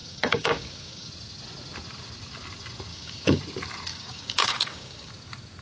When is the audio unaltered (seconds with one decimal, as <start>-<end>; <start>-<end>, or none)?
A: 1.1-2.9; 3.4-3.9; 5.1-5.6